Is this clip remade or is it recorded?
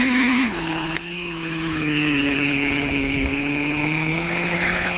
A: remade